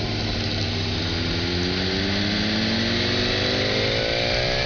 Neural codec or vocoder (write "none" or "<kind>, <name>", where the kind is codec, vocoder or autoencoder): none